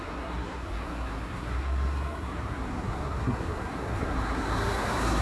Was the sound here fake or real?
fake